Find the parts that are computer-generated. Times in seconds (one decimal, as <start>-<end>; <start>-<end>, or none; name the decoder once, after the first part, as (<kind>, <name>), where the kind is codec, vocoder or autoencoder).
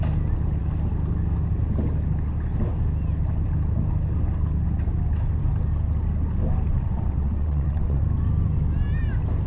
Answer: 6.7-8.0 (vocoder, WaveNeXt)